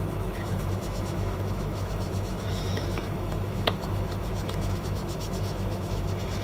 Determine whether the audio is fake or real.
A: fake